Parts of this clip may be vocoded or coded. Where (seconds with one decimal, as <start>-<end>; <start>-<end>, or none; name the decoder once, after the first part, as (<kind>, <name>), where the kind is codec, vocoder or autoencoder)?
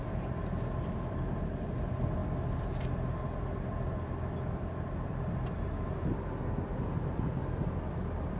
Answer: none